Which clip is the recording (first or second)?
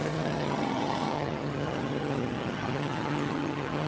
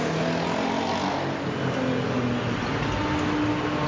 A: second